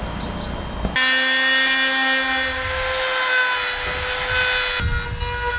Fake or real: real